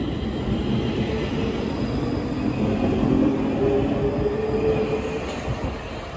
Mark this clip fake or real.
real